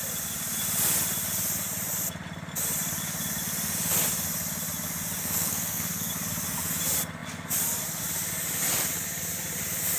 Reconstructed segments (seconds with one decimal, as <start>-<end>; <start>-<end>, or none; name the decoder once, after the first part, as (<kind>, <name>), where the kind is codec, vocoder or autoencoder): 5.2-6.1 (codec, SNAC)